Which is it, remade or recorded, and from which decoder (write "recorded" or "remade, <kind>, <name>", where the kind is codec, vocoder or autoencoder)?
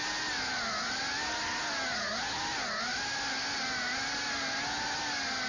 recorded